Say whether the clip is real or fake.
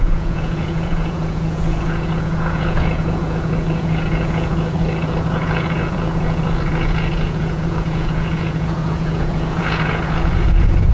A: fake